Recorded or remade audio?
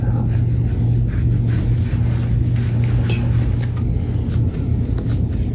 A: recorded